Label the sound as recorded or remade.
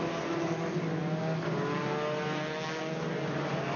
recorded